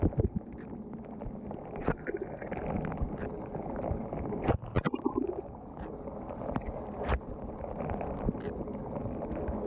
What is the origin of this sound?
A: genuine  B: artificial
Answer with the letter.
A